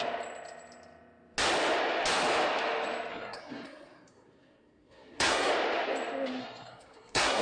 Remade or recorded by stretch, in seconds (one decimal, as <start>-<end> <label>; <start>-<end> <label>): 0.0-3.1 recorded; 3.1-5.5 remade; 5.5-6.4 recorded; 6.4-7.4 remade